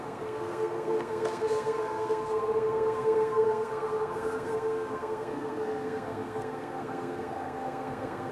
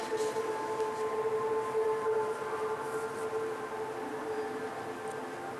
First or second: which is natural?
second